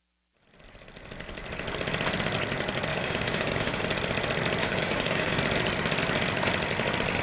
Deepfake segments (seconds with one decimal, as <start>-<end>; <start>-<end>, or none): 2.9-3.8; 4.6-5.4